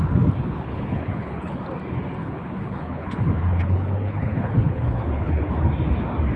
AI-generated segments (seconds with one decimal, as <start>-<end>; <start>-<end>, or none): 0.4-1.6; 2.2-5.5